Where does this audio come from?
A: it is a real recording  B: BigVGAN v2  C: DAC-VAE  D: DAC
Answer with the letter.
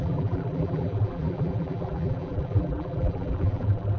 B